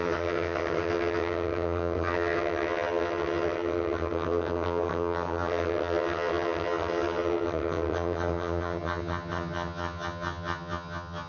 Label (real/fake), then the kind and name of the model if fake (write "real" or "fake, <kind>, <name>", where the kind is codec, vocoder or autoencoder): fake, vocoder, HiFi-GAN